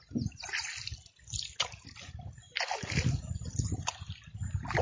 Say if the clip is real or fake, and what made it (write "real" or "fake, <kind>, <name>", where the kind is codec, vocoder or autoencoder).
real